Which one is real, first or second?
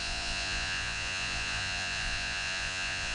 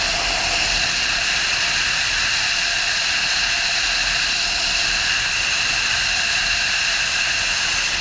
second